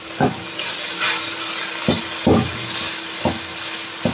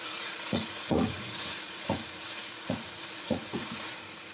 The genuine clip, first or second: first